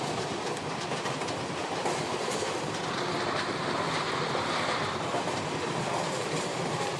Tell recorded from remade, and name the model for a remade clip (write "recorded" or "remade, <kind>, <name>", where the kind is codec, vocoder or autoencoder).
remade, vocoder, BigVGAN v2